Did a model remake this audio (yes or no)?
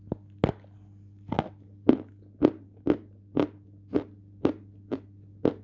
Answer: no